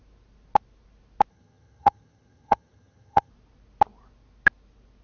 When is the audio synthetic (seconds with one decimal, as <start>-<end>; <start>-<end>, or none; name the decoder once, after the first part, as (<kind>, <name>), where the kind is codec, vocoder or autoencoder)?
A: 1.3-3.3 (vocoder, HiFi-GAN)